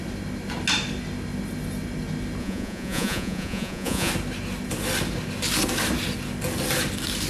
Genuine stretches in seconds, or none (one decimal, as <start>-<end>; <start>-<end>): 0.0-2.4; 4.1-7.3

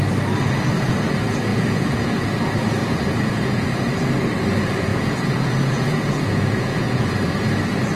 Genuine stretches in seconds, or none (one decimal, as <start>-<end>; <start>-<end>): 0.0-1.5; 2.3-2.8; 3.9-4.9; 7.1-8.0

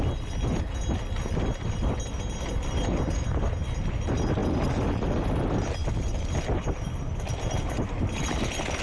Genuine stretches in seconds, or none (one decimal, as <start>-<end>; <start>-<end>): 0.0-8.8

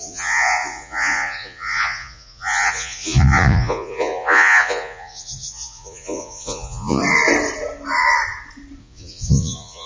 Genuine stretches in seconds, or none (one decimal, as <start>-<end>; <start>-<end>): 7.0-8.8

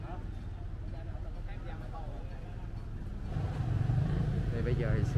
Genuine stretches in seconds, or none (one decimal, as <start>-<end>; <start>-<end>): 0.0-5.2